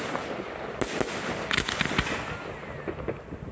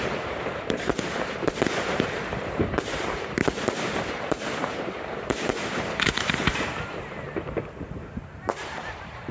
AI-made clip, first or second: second